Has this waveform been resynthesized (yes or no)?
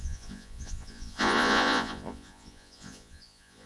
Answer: yes